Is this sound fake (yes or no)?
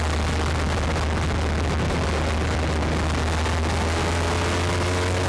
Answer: no